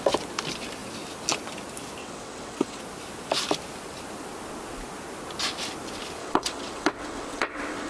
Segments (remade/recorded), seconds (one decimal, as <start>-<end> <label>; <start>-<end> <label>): 0.0-2.0 recorded; 2.0-2.8 remade; 2.8-6.2 recorded; 6.2-7.9 remade